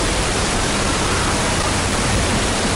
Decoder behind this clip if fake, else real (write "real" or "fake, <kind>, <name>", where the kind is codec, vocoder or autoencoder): real